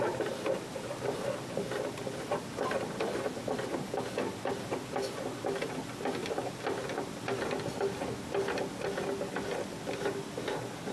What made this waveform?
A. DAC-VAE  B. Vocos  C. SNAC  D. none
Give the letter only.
D